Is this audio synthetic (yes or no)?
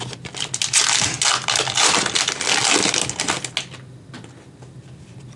no